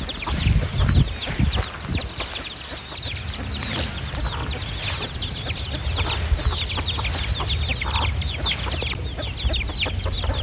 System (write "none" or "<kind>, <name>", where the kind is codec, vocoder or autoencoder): none